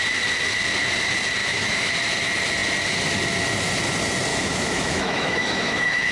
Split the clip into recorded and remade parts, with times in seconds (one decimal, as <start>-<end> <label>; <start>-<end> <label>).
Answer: 0.0-1.4 recorded; 1.4-1.9 remade; 1.9-4.3 recorded; 4.3-6.1 remade